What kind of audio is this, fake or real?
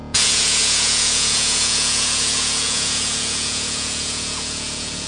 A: fake